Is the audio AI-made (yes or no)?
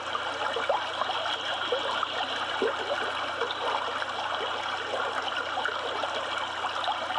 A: no